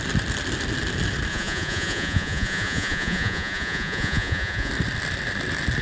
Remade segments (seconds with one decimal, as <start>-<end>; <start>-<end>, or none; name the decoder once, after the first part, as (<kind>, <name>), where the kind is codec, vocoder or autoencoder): 1.3-4.7 (vocoder, Vocos)